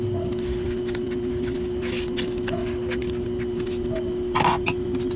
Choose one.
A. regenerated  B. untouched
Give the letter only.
B